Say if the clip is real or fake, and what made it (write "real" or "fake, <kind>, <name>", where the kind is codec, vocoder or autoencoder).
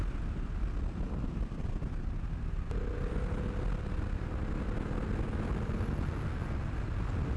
real